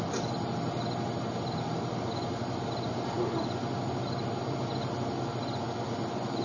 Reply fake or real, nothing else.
real